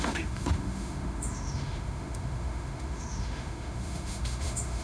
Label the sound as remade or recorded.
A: remade